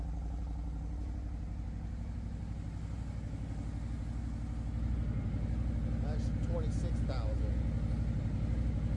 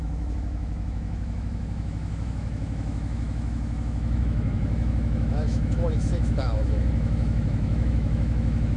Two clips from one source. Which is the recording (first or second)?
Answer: first